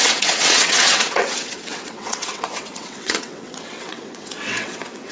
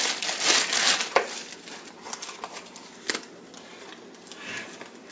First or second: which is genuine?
second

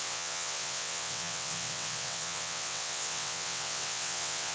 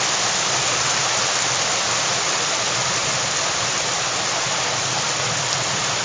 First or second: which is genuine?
second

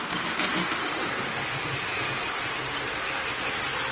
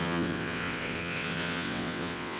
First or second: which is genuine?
first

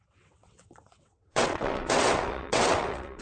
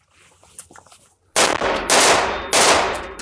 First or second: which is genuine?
second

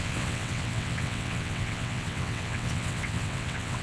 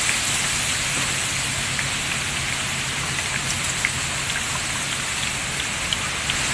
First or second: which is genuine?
second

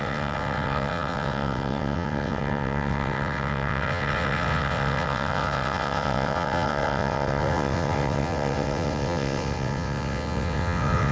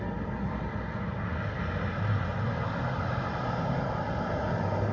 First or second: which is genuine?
second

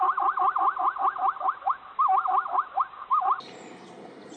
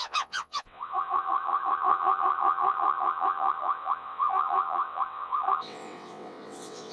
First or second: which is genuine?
first